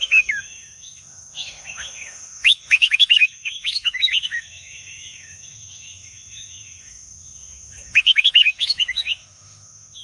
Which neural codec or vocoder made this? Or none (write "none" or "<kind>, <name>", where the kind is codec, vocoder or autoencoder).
autoencoder, DAC-VAE